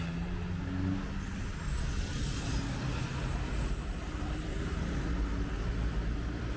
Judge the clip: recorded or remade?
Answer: recorded